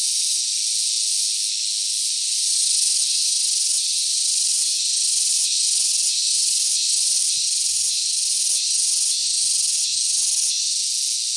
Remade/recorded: recorded